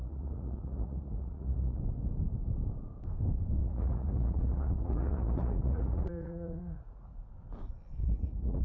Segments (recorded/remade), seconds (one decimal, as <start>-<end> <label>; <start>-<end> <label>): 0.0-1.8 remade; 1.8-3.6 recorded; 3.6-7.3 remade; 7.3-8.0 recorded; 8.0-8.6 remade